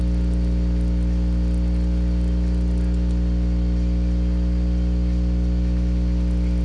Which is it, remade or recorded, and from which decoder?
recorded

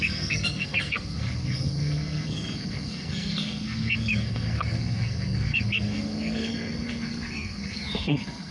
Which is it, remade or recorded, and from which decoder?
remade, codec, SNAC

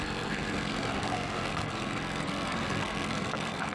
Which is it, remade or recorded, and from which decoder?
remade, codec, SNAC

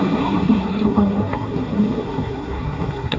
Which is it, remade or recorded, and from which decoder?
remade, codec, SNAC